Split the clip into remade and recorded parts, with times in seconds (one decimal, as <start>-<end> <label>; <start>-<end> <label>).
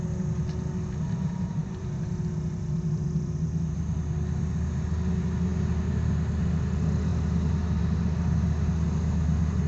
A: 0.0-1.6 recorded; 1.6-4.4 remade; 4.4-9.7 recorded